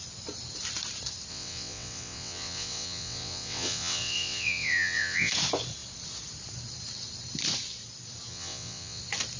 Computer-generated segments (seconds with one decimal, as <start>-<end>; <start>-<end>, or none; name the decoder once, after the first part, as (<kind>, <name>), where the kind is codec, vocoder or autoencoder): 1.3-5.3 (vocoder, WaveNeXt); 8.3-9.0